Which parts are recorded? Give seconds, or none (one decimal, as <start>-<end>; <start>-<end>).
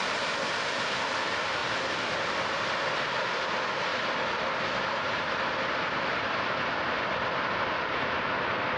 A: 0.0-0.5; 1.6-2.2